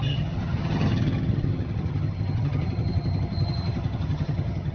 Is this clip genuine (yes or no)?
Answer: no